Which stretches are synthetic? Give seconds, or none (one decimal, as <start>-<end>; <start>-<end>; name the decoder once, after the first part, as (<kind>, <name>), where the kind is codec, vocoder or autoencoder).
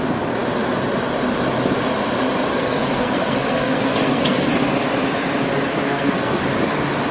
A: 2.5-4.5 (codec, SNAC); 5.7-6.4